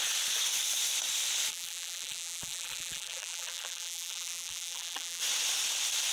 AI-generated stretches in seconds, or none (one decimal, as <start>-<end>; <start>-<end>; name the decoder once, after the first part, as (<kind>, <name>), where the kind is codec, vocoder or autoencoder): 1.5-5.2 (vocoder, BigVGAN v2)

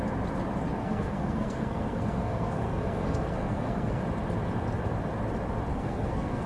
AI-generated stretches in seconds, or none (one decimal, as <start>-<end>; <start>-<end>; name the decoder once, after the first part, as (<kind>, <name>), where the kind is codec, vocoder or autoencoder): 0.8-4.0 (codec, SNAC); 5.7-6.5

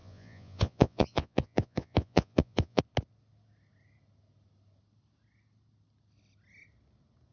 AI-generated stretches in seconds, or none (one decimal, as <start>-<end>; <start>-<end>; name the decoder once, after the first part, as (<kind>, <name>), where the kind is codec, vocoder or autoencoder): 0.0-2.8 (vocoder, Vocos)

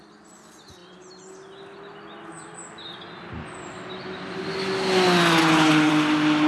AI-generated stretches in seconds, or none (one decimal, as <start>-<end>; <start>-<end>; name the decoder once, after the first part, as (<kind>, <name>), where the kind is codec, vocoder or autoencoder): 5.4-5.9 (codec, HILCodec)